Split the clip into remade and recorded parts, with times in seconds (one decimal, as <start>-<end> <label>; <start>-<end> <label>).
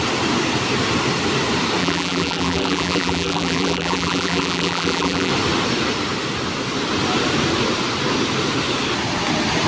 0.0-1.8 recorded; 1.8-5.3 remade; 5.3-9.7 recorded